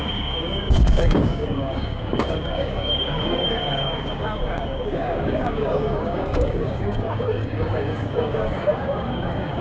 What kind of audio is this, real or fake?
fake